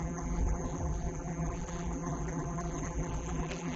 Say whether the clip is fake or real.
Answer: fake